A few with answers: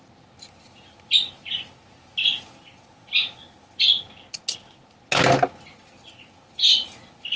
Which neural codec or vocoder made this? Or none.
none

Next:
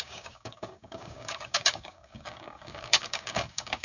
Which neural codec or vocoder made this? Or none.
codec, DAC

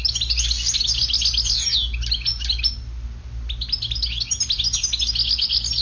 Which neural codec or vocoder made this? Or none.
none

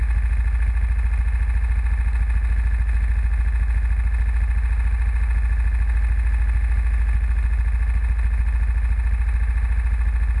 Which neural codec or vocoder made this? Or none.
none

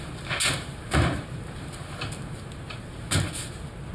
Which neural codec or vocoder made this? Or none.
none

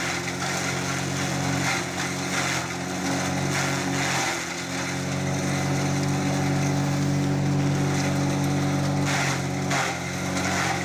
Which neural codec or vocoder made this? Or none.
none